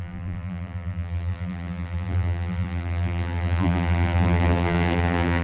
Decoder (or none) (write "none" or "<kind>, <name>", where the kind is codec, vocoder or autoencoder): vocoder, BigVGAN v2